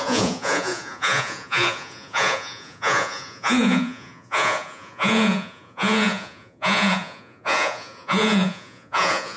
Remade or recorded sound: remade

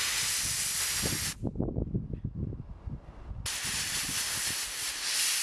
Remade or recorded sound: recorded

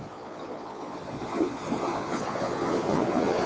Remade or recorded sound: remade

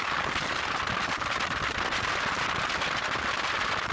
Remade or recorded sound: recorded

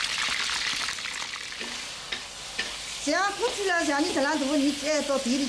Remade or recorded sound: recorded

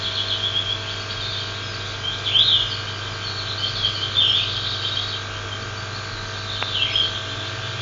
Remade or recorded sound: recorded